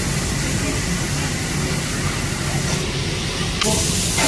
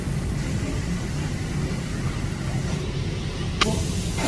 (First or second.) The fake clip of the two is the second